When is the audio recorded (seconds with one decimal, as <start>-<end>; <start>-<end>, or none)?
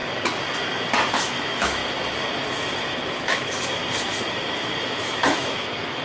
0.0-1.1; 1.8-3.1; 3.8-4.8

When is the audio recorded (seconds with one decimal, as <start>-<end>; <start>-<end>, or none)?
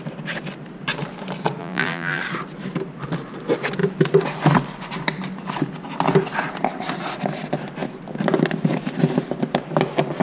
0.0-1.6; 2.2-10.2